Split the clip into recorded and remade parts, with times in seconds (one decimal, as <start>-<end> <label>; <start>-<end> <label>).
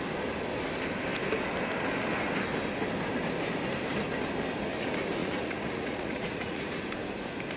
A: 0.0-5.2 recorded; 5.2-6.9 remade; 6.9-7.6 recorded